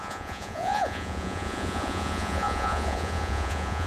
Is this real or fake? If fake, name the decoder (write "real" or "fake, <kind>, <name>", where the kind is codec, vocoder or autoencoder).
fake, vocoder, Vocos